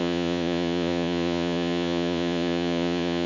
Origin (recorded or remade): remade